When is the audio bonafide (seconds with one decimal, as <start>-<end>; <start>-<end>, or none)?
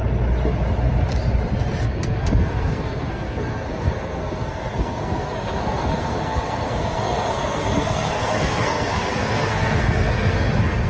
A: 0.0-1.8